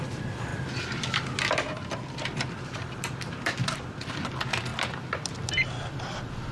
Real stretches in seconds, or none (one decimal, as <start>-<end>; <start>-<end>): 0.5-2.1